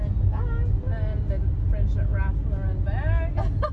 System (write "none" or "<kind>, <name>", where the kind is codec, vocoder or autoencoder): none